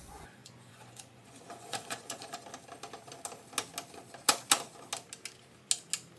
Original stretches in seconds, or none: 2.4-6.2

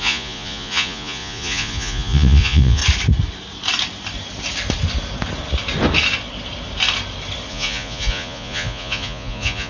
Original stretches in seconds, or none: 2.8-7.5

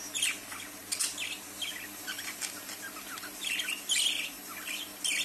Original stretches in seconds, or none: 0.0-5.2